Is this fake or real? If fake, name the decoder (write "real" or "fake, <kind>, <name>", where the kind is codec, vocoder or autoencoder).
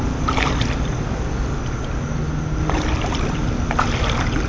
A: real